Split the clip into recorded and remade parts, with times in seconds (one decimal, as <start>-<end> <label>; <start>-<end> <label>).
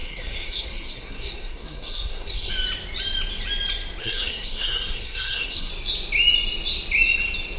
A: 0.0-2.5 remade; 2.5-4.0 recorded; 4.0-5.7 remade; 5.7-7.6 recorded